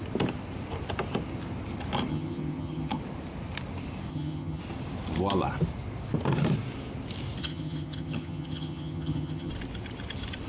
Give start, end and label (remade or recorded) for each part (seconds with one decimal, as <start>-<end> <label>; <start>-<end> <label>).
0.0-2.1 recorded; 2.1-3.0 remade; 3.0-4.1 recorded; 4.1-4.6 remade; 4.6-7.4 recorded; 7.4-9.5 remade; 9.5-10.5 recorded